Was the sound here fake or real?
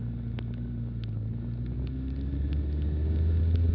real